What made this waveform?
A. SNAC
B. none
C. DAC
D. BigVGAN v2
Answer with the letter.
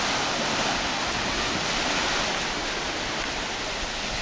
B